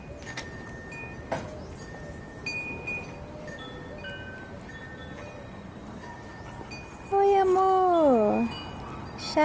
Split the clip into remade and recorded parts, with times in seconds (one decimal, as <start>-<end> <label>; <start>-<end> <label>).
0.0-5.8 recorded; 5.8-6.3 remade; 6.3-9.4 recorded